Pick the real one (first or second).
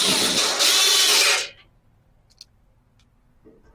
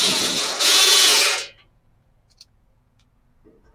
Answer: first